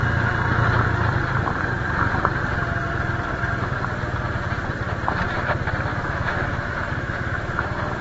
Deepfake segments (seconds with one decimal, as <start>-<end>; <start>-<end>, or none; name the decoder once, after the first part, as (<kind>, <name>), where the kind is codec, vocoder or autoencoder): 5.9-8.0 (autoencoder, DAC-VAE)